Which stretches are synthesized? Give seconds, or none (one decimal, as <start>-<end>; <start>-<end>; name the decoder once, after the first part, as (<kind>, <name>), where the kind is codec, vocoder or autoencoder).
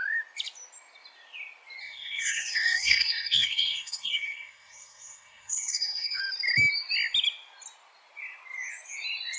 1.8-6.2 (codec, SNAC)